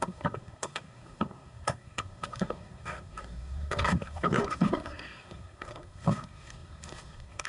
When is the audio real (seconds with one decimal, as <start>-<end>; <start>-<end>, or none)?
none